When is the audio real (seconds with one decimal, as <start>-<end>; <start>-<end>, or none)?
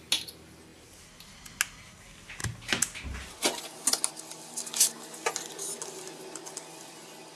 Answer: 0.0-7.4